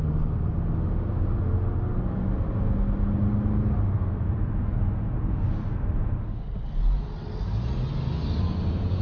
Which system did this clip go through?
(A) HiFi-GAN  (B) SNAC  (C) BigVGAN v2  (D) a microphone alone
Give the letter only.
D